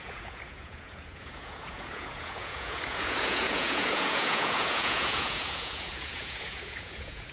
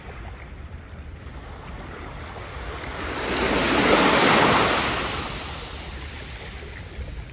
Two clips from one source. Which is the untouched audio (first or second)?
second